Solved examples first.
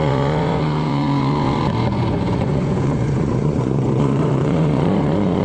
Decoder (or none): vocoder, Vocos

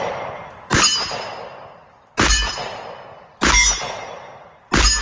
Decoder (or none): none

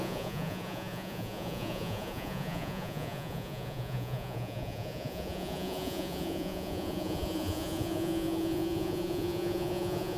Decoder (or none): vocoder, Vocos